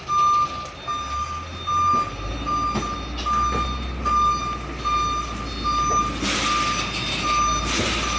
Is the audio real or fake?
real